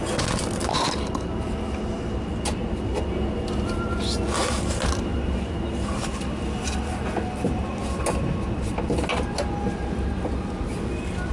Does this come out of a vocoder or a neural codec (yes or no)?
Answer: no